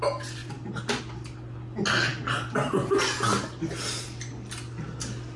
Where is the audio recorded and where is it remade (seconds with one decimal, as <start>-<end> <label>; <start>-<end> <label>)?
0.0-0.4 recorded; 0.4-1.0 remade; 1.0-5.4 recorded